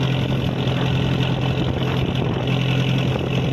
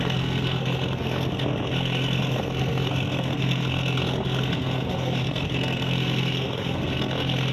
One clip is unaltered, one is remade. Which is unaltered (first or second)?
first